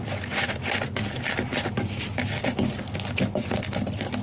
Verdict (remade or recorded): recorded